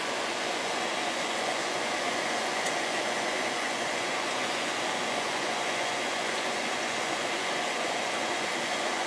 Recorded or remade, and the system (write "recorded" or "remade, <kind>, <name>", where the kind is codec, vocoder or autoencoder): remade, vocoder, Vocos